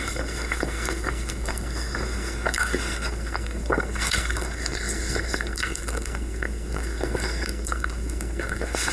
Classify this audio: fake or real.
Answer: fake